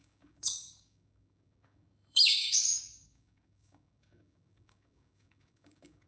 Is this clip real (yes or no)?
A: no